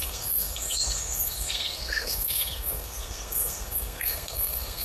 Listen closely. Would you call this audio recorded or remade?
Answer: remade